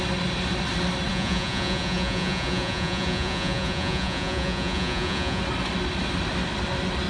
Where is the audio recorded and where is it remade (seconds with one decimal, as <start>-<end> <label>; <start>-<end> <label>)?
0.0-1.1 recorded; 1.1-5.4 remade; 5.4-7.1 recorded